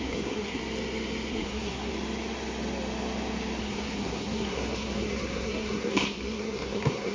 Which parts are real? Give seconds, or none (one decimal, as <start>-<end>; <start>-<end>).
0.6-1.3; 1.9-3.6